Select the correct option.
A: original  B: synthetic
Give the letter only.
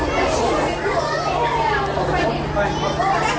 A